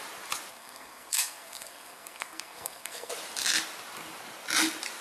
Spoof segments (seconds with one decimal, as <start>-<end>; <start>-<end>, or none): 0.5-3.1